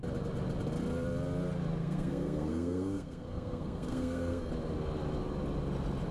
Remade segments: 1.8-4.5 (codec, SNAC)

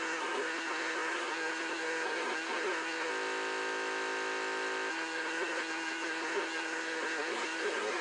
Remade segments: 0.0-3.1 (codec, SNAC); 4.9-8.0

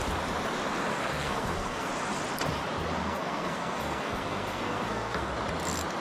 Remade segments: 0.9-1.9 (codec, SNAC); 3.0-5.3